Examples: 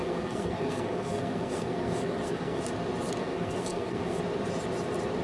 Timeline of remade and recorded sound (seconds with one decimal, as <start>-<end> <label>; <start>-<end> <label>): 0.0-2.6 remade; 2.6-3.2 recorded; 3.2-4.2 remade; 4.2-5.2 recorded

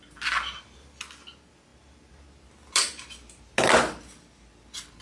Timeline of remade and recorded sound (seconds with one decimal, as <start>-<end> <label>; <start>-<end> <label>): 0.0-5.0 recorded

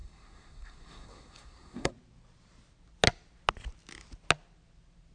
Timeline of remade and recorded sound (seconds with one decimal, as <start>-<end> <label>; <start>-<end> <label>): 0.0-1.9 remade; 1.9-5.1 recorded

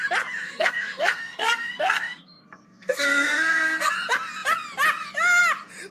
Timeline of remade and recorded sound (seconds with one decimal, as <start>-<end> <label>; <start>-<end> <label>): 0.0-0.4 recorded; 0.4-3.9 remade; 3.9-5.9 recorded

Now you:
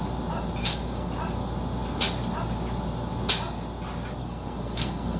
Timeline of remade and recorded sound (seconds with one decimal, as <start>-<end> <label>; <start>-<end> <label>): 0.0-0.6 recorded; 0.6-1.1 remade; 1.1-4.2 recorded; 4.2-5.2 remade

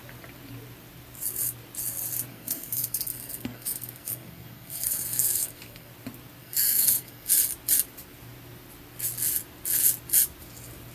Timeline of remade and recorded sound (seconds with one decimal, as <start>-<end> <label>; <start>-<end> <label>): 0.0-2.3 recorded; 2.3-5.9 remade; 5.9-6.4 recorded; 6.4-7.3 remade; 7.3-10.9 recorded

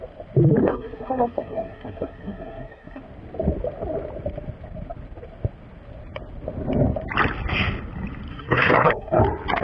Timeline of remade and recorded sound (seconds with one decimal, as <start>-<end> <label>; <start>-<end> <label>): 0.0-0.6 recorded; 0.6-3.0 remade; 3.0-8.3 recorded; 8.3-9.2 remade; 9.2-9.6 recorded

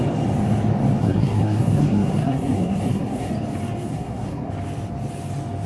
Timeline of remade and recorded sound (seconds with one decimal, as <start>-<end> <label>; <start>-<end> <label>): 0.0-1.0 recorded; 1.0-3.3 remade; 3.3-3.9 recorded; 3.9-4.5 remade; 4.5-5.7 recorded